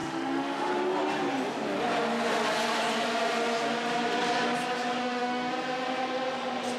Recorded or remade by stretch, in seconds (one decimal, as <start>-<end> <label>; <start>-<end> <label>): 0.0-0.7 remade; 0.7-5.0 recorded; 5.0-5.5 remade; 5.5-6.8 recorded